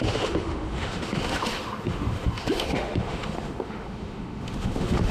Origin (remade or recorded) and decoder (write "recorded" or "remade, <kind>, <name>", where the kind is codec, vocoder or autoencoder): remade, autoencoder, DAC-VAE